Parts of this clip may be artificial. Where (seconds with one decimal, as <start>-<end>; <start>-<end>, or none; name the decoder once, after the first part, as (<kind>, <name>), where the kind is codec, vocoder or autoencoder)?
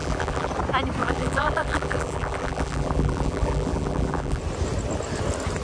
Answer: 0.0-0.5 (vocoder, BigVGAN v2); 1.0-4.4